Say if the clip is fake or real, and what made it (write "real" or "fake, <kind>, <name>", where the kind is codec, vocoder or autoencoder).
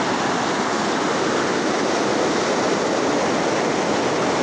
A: real